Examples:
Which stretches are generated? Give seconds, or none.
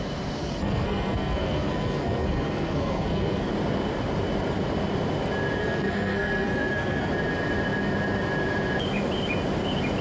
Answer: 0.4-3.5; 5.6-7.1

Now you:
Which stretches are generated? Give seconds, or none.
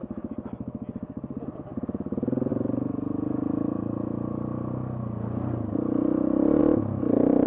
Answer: none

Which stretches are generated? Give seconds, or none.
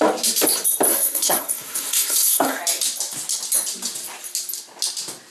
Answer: 0.9-2.6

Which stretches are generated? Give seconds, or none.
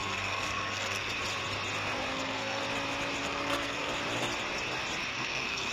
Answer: 0.0-1.1; 2.1-2.6; 3.2-3.9; 5.1-5.7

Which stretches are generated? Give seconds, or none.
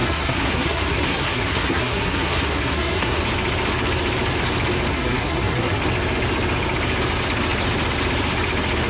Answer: 0.0-3.2; 4.9-5.8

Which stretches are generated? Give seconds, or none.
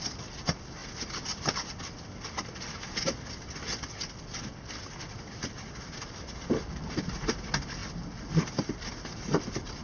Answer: none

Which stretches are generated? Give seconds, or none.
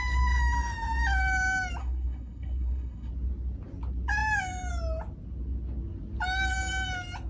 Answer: 1.8-3.1